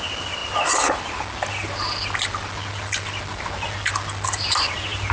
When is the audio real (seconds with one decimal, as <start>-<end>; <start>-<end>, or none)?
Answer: 0.0-5.1